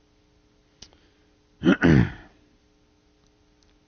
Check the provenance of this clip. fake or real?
real